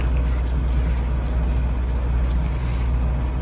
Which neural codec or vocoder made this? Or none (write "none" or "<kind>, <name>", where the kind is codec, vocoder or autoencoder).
none